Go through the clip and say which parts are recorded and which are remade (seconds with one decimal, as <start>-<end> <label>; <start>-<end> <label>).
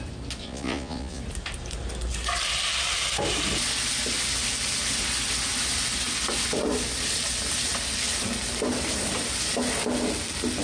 0.0-0.4 recorded; 0.4-1.2 remade; 1.2-10.6 recorded